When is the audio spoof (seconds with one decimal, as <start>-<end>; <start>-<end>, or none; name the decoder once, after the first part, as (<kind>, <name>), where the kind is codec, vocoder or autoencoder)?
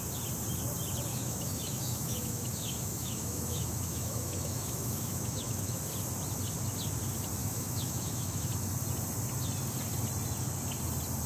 1.1-5.8 (autoencoder, DAC-VAE); 7.4-8.5